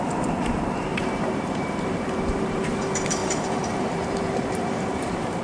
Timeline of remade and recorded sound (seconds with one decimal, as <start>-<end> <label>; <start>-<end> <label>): 0.0-5.4 remade